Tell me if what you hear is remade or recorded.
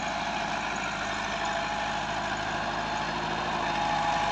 recorded